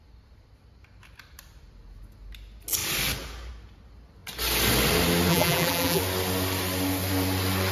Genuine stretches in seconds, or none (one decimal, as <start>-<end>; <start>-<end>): 0.0-5.3; 6.0-7.7